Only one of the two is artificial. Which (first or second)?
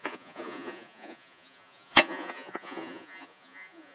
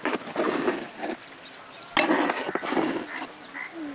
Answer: first